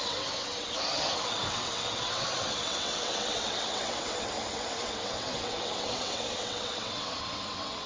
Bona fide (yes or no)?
no